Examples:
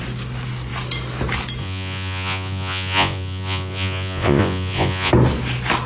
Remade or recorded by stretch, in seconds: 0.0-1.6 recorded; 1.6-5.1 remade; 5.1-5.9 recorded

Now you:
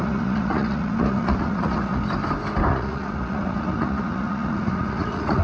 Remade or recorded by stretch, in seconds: 0.0-2.0 remade; 2.0-2.7 recorded; 2.7-5.4 remade

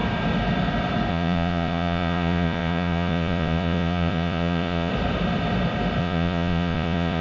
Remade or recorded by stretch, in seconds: 0.0-1.1 recorded; 1.1-4.9 remade; 4.9-6.0 recorded; 6.0-7.2 remade

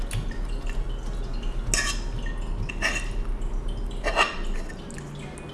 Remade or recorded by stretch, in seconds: 0.0-5.5 recorded

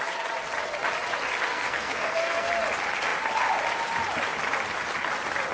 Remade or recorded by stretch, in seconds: 0.0-1.5 recorded; 1.5-2.5 remade; 2.5-5.5 recorded

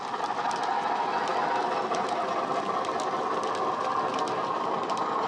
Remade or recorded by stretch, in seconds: 0.0-5.3 recorded

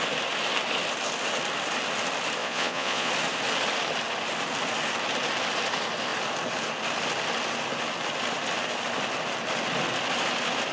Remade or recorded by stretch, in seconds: 0.0-2.4 recorded; 2.4-3.1 remade; 3.1-10.7 recorded